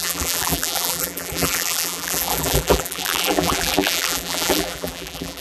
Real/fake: fake